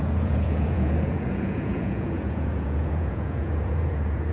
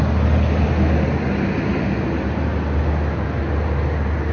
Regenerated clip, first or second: first